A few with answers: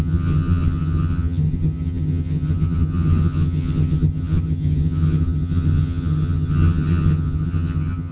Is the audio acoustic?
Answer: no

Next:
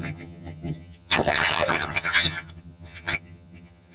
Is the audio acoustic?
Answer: no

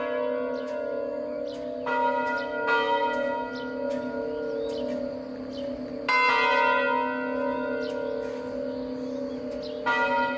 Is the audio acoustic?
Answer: yes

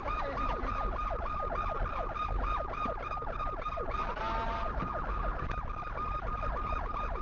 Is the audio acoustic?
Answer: yes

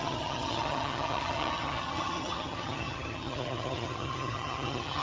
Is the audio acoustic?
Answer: no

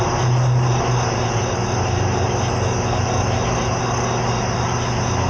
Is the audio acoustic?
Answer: yes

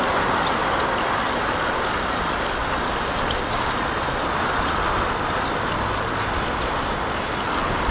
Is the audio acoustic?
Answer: yes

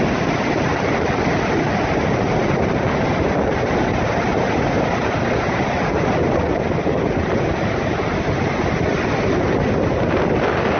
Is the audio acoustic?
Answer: yes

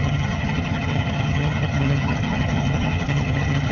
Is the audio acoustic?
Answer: no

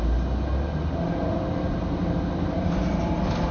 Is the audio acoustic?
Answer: yes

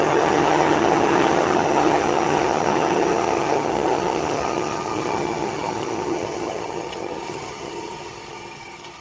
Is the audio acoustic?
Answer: no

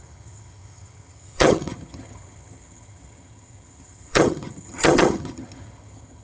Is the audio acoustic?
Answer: no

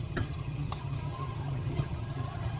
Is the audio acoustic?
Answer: no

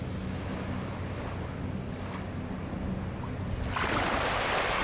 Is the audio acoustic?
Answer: yes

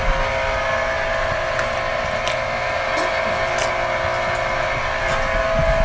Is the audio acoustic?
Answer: yes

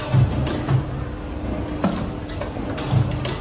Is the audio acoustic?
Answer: yes